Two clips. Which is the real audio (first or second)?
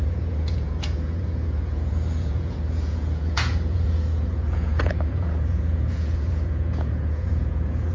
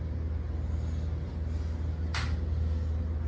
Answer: second